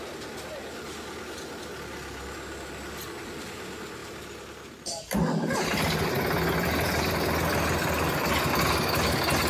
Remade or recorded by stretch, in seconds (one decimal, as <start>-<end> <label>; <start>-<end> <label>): 0.0-4.0 recorded; 4.0-8.3 remade; 8.3-9.5 recorded

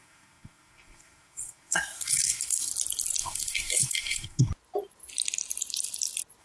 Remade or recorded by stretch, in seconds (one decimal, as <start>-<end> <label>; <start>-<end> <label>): 0.0-2.7 remade; 2.7-3.2 recorded; 3.2-4.5 remade; 4.5-6.4 recorded

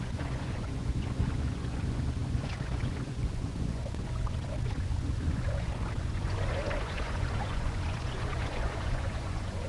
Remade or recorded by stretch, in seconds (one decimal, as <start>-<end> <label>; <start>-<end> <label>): 0.0-9.7 remade

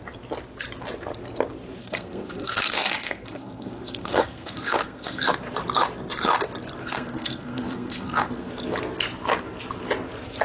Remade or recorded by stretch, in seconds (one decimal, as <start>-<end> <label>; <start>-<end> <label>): 0.0-1.8 recorded; 1.8-5.3 remade; 5.3-6.8 recorded; 6.8-8.5 remade; 8.5-10.4 recorded

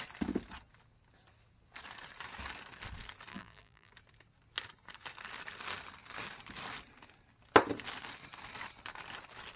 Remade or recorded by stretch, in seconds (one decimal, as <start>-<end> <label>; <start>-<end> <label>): 0.0-3.3 recorded; 3.3-3.9 remade; 3.9-9.6 recorded